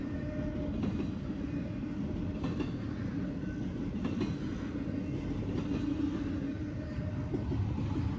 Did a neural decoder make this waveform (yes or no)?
no